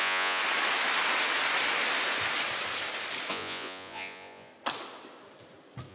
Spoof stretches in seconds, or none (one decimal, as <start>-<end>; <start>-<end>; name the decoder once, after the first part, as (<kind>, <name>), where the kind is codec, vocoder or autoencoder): 0.0-0.4 (vocoder, Vocos); 3.3-4.5